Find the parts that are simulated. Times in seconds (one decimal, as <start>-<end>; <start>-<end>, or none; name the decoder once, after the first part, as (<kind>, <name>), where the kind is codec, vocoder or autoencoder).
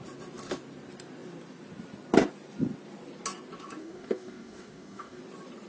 3.8-5.2 (codec, DAC)